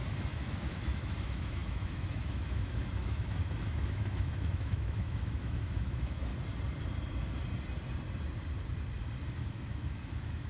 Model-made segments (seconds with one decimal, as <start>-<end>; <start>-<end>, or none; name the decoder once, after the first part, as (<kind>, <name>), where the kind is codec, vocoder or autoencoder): 0.0-6.3 (autoencoder, DAC-VAE); 9.3-10.5